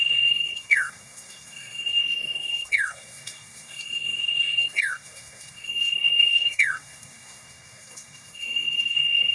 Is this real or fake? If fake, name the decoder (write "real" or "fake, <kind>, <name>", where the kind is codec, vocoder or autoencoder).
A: fake, codec, SNAC